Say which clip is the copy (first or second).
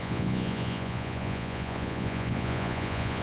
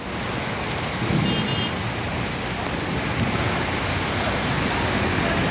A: first